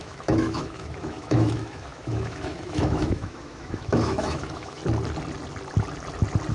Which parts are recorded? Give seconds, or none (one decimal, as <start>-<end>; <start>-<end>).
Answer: 4.8-6.5